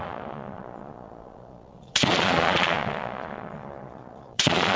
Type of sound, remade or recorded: remade